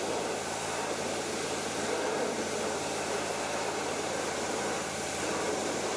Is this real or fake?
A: fake